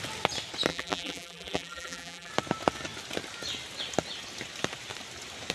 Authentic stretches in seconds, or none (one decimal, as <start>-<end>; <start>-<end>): 0.0-0.7; 2.3-5.5

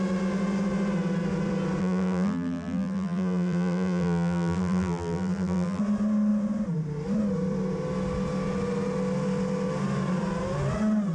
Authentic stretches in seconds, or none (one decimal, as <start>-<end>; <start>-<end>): 0.0-1.8; 5.8-11.1